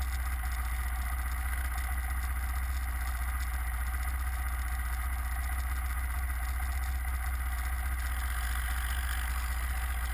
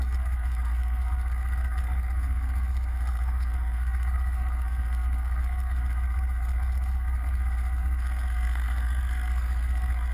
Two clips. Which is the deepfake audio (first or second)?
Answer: second